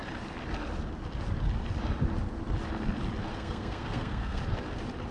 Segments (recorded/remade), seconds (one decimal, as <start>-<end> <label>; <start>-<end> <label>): 0.0-3.3 recorded; 3.3-4.4 remade; 4.4-5.1 recorded